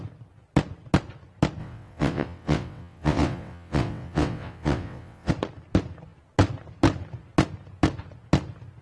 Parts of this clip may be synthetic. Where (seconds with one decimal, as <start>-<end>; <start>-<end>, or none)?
1.6-5.3

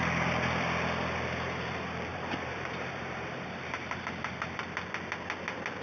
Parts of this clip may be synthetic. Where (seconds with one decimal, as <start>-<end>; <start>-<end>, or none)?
2.1-4.0

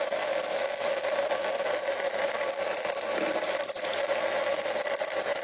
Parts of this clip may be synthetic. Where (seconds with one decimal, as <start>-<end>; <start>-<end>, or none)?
none